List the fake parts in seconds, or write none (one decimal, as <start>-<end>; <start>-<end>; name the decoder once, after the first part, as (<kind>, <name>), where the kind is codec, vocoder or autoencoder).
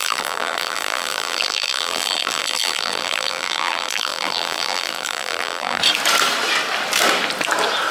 0.0-5.8 (vocoder, BigVGAN v2)